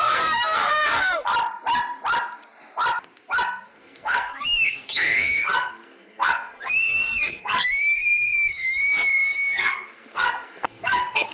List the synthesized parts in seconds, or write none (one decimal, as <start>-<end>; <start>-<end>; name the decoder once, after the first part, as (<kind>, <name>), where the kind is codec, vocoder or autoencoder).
0.0-1.3 (codec, SNAC); 3.7-11.3